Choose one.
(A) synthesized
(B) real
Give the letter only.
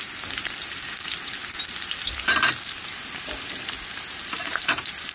B